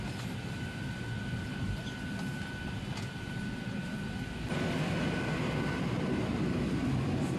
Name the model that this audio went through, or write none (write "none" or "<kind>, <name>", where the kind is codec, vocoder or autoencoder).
none